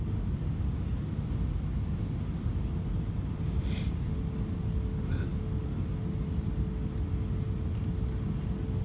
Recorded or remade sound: recorded